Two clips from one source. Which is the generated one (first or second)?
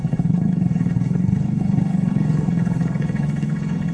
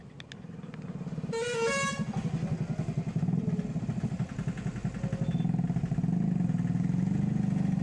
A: first